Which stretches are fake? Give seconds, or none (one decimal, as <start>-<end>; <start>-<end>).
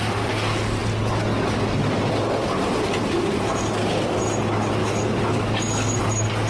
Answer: 4.8-6.0